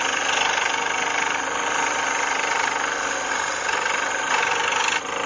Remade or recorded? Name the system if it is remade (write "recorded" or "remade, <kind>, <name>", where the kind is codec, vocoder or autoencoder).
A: recorded